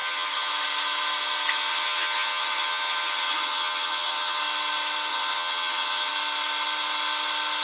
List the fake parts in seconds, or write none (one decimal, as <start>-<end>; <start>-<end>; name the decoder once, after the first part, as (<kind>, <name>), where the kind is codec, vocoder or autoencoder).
0.0-0.5 (vocoder, HiFi-GAN); 1.7-4.4; 5.1-6.1